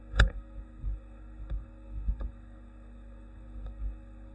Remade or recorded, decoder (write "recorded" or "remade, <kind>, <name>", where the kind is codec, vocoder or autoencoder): remade, codec, SNAC